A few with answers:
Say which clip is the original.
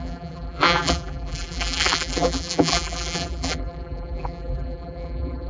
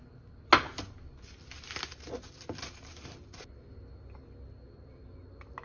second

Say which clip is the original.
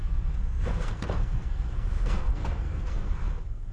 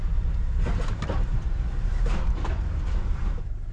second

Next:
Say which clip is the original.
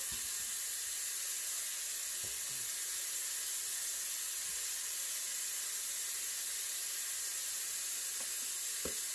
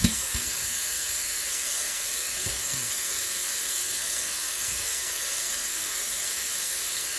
first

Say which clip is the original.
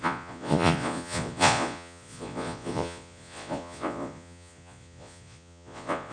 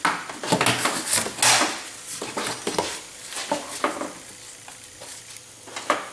second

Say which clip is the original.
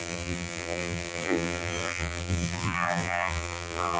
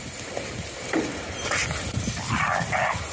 second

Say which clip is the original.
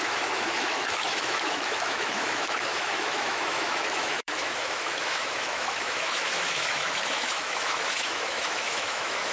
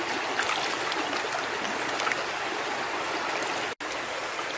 second